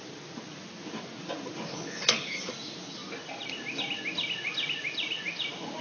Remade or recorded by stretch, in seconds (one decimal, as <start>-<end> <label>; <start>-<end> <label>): 0.0-1.7 recorded; 1.7-2.5 remade; 2.5-5.8 recorded